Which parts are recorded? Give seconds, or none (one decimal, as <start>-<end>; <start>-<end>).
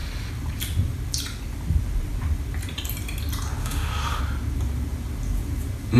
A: 0.0-3.6; 4.2-6.0